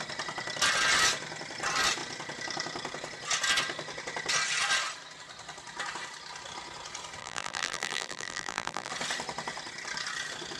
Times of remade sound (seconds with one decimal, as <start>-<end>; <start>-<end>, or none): 7.2-8.9